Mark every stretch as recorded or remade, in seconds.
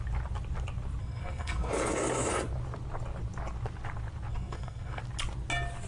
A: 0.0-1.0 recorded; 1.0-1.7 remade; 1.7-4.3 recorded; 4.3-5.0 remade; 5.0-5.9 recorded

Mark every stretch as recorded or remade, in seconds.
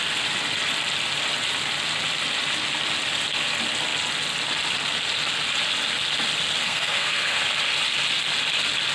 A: 0.0-6.6 recorded; 6.6-7.4 remade; 7.4-8.9 recorded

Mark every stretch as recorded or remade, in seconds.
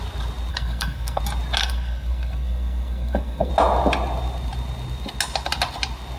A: 0.0-0.5 recorded; 0.5-1.2 remade; 1.2-1.6 recorded; 1.6-3.5 remade; 3.5-6.2 recorded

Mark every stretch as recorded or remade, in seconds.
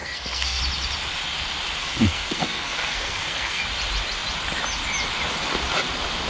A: 0.0-0.6 remade; 0.6-1.8 recorded; 1.8-3.6 remade; 3.6-6.3 recorded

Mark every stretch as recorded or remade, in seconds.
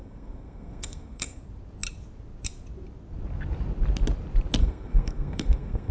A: 0.0-1.4 remade; 1.4-4.6 recorded; 4.6-5.9 remade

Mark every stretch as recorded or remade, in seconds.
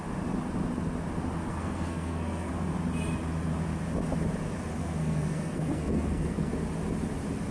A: 0.0-1.5 recorded; 1.5-2.5 remade; 2.5-4.8 recorded; 4.8-6.5 remade; 6.5-7.5 recorded